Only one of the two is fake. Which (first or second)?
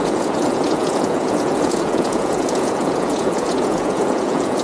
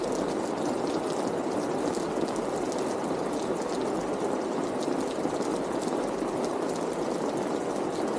first